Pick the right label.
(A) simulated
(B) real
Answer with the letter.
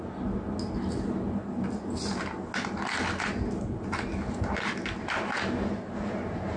B